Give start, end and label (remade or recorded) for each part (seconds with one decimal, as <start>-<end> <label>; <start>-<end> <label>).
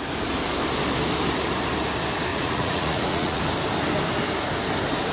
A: 0.0-2.3 recorded; 2.3-3.4 remade; 3.4-5.1 recorded